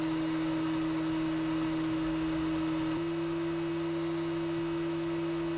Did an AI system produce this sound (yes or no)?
no